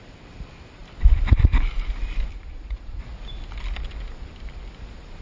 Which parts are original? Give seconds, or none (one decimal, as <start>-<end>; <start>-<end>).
0.0-2.3; 3.0-5.2